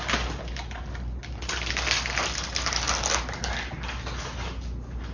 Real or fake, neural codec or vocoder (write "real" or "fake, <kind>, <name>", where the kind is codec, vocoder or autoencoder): real